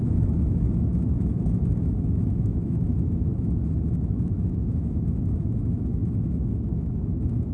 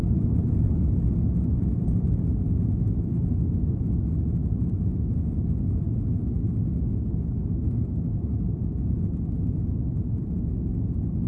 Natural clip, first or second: second